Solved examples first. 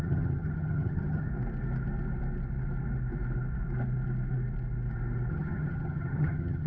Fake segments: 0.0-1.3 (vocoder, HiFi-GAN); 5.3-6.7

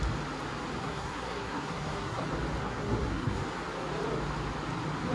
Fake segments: 0.8-2.2 (codec, SNAC); 2.6-3.4

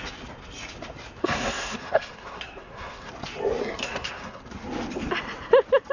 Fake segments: 1.2-3.1 (codec, SNAC); 3.6-4.4